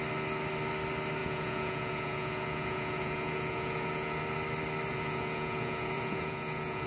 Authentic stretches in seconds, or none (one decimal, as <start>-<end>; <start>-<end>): 0.0-1.2; 4.2-4.9